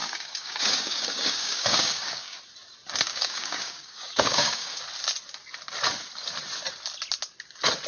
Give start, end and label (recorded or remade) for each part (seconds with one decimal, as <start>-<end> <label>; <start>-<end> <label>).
0.0-2.4 remade; 2.4-3.1 recorded; 3.1-4.8 remade; 4.8-7.9 recorded